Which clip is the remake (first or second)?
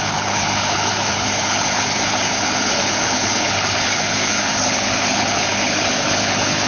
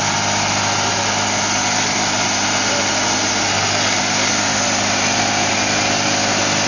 first